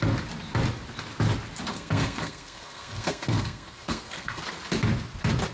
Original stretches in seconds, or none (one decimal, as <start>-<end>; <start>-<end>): 0.0-1.7; 4.4-5.5